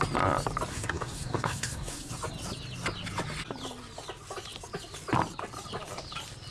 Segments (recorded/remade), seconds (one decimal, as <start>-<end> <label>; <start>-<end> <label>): 0.0-0.7 recorded; 0.7-2.1 remade; 2.1-6.5 recorded

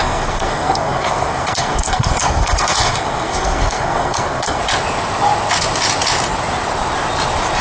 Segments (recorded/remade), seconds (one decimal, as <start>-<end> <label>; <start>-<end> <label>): 0.0-4.6 remade; 4.6-7.6 recorded

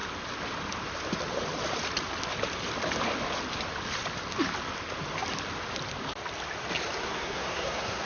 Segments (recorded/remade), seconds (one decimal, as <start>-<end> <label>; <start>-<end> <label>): 0.0-7.0 recorded; 7.0-8.1 remade

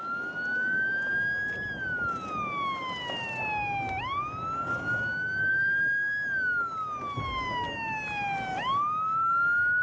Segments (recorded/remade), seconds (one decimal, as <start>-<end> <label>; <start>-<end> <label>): 0.0-9.8 recorded

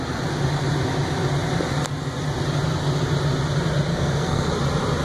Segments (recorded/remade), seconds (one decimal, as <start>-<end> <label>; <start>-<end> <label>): 0.0-3.9 recorded; 3.9-4.5 remade; 4.5-5.0 recorded

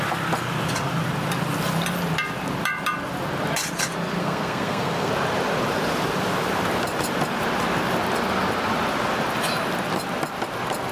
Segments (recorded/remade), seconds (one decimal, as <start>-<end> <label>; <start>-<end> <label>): 0.0-4.2 recorded; 4.2-5.1 remade; 5.1-10.9 recorded